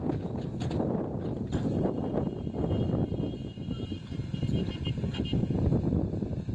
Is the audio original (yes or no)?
yes